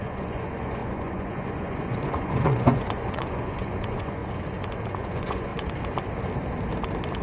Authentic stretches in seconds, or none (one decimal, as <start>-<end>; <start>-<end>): 4.2-4.9; 5.5-7.2